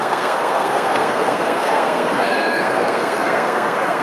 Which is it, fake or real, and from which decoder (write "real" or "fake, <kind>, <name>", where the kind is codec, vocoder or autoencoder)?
fake, codec, SNAC